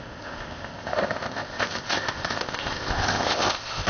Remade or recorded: remade